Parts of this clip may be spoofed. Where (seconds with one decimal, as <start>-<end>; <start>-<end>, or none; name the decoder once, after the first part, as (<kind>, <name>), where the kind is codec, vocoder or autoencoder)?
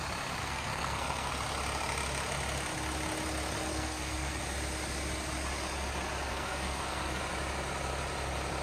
0.4-1.3 (codec, SNAC); 3.7-4.4; 6.3-7.2